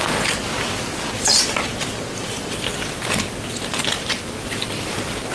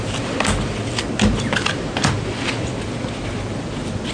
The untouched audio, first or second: second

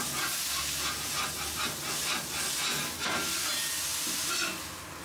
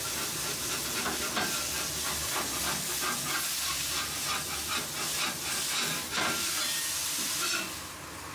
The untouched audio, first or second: first